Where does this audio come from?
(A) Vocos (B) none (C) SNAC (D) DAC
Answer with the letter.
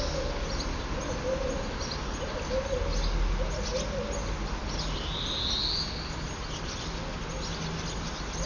B